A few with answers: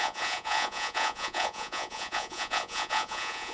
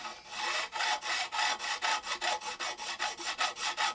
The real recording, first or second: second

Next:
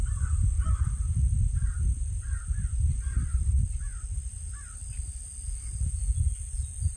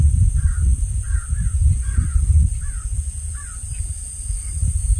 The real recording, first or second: first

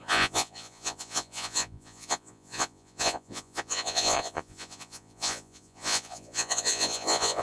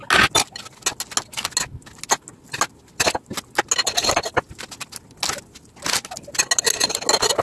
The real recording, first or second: second